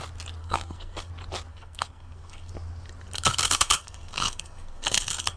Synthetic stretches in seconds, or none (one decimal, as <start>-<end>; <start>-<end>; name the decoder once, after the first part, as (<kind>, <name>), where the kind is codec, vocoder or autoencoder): 0.4-1.1 (codec, SNAC); 1.5-2.5; 3.3-5.4